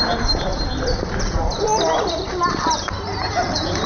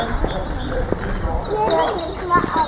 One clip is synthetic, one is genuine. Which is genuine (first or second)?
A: second